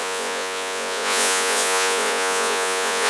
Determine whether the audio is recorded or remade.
remade